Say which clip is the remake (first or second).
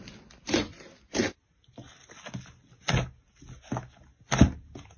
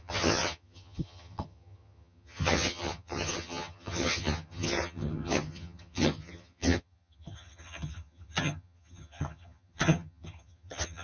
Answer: second